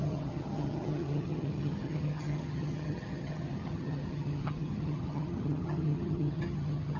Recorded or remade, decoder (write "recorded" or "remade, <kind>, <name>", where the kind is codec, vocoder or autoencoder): remade, vocoder, HiFi-GAN